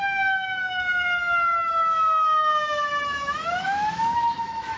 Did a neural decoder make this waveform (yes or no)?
yes